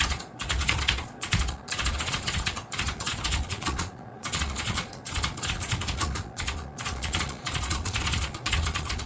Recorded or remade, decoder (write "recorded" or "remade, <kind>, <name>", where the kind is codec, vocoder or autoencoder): remade, vocoder, Vocos